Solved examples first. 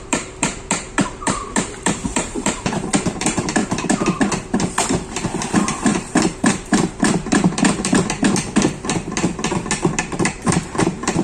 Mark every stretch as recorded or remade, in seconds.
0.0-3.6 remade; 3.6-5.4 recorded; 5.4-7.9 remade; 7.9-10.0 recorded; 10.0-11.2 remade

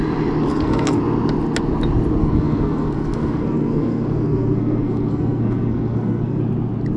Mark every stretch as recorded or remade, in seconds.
0.0-0.5 recorded; 0.5-1.0 remade; 1.0-2.2 recorded; 2.2-6.4 remade; 6.4-7.0 recorded